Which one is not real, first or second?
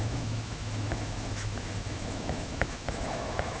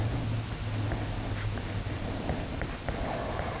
first